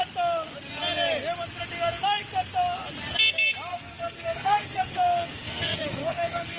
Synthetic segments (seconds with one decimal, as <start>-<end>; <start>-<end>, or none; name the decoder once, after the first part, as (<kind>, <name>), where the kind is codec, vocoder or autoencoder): 3.7-6.6 (codec, SNAC)